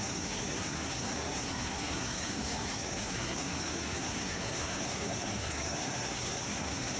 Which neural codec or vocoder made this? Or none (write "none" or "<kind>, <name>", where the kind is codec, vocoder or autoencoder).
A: codec, SNAC